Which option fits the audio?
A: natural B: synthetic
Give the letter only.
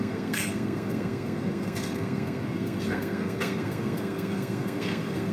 B